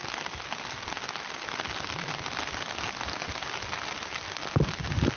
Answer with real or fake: real